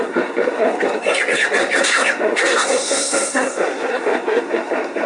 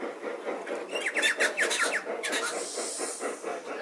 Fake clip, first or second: first